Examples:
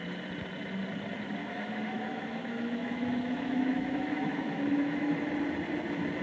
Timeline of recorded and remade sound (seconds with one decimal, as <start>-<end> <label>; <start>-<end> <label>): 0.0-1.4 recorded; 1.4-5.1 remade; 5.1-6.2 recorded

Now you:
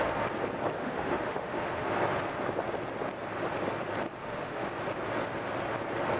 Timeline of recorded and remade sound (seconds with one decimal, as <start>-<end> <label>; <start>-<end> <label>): 0.0-0.8 recorded; 0.8-1.9 remade; 1.9-4.2 recorded; 4.2-4.7 remade; 4.7-6.2 recorded

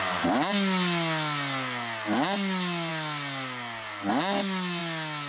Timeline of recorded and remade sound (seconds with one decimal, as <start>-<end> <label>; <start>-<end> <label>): 0.0-5.3 recorded

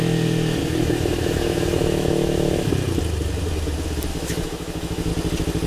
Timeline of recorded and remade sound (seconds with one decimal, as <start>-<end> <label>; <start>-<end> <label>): 0.0-0.6 recorded; 0.6-2.7 remade; 2.7-4.1 recorded; 4.1-5.1 remade; 5.1-5.7 recorded